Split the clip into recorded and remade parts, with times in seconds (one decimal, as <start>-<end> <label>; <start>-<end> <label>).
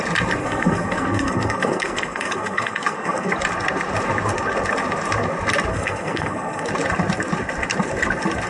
0.0-0.4 recorded; 0.4-3.3 remade; 3.3-5.7 recorded; 5.7-6.7 remade; 6.7-8.5 recorded